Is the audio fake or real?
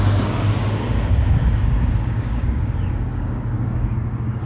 fake